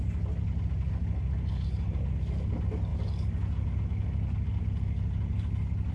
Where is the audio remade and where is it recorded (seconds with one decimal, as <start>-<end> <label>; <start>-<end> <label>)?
0.0-5.9 recorded